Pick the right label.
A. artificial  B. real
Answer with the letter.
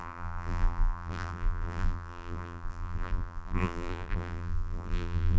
A